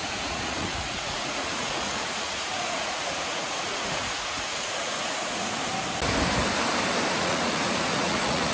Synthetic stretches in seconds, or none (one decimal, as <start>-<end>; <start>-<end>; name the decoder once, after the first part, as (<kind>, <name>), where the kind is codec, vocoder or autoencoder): 0.0-5.6 (vocoder, Vocos); 7.1-8.5